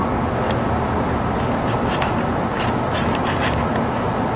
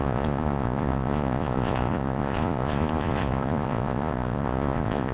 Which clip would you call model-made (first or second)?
second